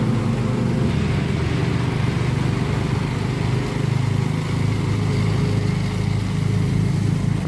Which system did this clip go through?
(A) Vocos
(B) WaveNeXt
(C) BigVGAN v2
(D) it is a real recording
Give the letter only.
D